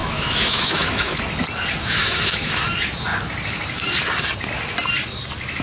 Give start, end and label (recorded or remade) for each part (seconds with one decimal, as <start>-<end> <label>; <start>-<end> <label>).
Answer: 0.0-1.2 remade; 1.2-1.8 recorded; 1.8-2.6 remade; 2.6-5.6 recorded